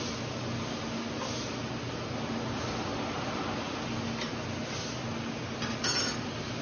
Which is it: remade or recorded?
recorded